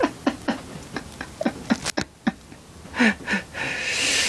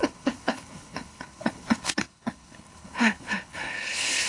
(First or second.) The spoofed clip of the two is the second